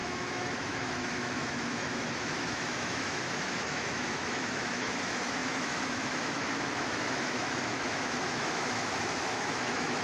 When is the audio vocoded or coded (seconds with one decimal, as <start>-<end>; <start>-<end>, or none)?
0.0-10.0